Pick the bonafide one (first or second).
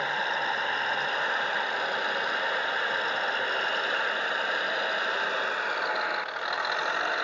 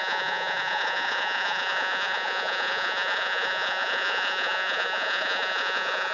first